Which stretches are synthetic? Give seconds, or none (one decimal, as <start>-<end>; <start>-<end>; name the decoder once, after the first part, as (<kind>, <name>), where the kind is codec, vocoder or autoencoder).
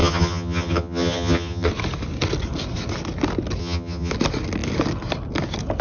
0.0-1.7 (vocoder, HiFi-GAN); 3.6-4.1